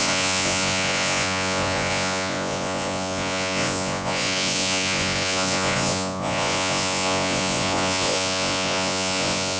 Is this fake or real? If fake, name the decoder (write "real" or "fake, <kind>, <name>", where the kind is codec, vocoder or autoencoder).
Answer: fake, vocoder, Vocos